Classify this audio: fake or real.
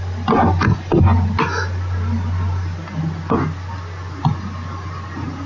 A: real